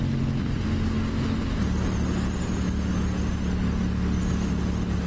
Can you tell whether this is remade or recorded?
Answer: recorded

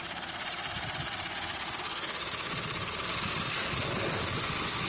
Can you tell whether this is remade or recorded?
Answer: remade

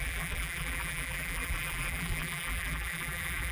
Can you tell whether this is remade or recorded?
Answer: remade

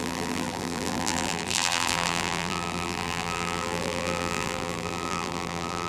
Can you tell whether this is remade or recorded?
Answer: remade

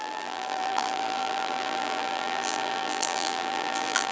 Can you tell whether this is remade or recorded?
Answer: remade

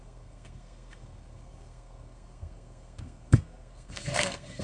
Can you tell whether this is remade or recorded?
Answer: remade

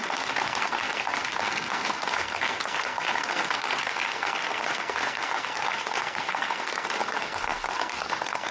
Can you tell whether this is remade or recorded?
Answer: remade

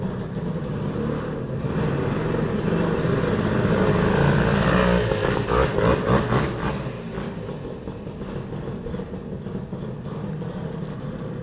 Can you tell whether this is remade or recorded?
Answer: recorded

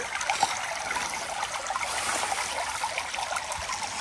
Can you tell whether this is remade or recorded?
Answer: recorded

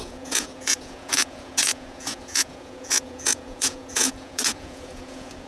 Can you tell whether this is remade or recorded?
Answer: remade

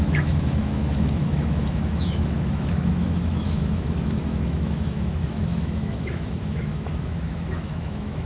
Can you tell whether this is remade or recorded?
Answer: remade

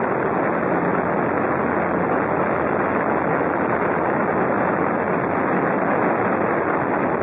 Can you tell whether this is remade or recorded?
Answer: recorded